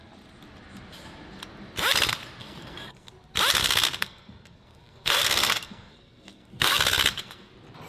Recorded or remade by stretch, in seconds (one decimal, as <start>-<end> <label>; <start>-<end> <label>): 0.0-2.4 recorded; 2.4-3.1 remade; 3.1-3.6 recorded; 3.6-7.5 remade; 7.5-7.9 recorded